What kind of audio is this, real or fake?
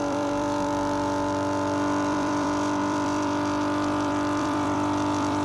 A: fake